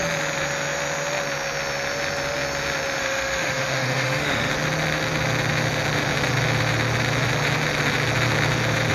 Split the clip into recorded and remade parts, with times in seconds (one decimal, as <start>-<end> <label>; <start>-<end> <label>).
0.0-3.0 recorded; 3.0-4.5 remade; 4.5-8.9 recorded